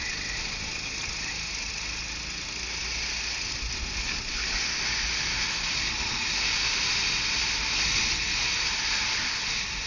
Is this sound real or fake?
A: real